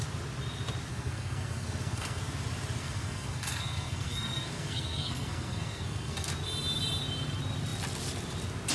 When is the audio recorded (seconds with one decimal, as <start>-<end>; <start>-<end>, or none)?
0.0-0.9; 2.2-2.8; 6.3-8.7